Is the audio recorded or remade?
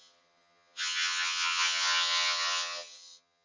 remade